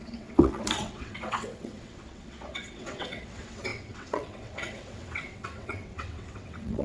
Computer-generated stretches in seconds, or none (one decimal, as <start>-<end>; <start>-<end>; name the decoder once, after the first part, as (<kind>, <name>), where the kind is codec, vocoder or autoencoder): 0.0-6.8 (vocoder, WaveNeXt)